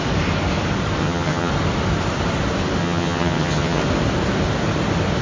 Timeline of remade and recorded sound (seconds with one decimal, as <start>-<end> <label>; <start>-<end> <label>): 0.0-1.0 recorded; 1.0-1.5 remade; 1.5-2.8 recorded; 2.8-3.8 remade; 3.8-5.2 recorded